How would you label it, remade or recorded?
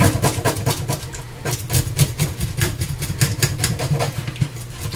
recorded